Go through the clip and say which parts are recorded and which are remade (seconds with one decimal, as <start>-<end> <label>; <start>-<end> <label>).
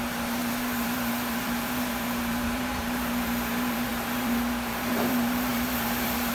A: 0.0-6.3 remade